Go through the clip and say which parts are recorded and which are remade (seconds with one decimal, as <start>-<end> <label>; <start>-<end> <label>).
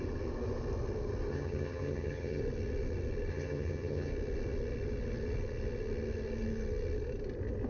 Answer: 0.0-1.3 recorded; 1.3-2.4 remade; 2.4-3.3 recorded; 3.3-4.1 remade; 4.1-7.7 recorded